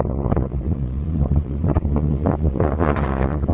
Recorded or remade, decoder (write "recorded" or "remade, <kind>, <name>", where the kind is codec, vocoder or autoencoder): remade, vocoder, Vocos